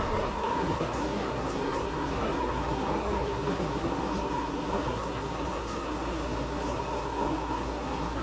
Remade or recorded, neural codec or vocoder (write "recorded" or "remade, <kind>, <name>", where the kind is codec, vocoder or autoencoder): remade, codec, SNAC